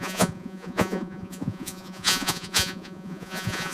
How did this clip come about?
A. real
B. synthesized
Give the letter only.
B